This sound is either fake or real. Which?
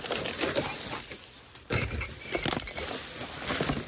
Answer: real